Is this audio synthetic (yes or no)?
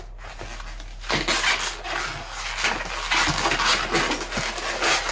no